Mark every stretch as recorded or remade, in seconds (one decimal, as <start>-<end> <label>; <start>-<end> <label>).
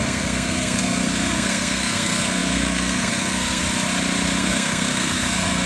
0.0-3.6 remade; 3.6-4.4 recorded; 4.4-5.7 remade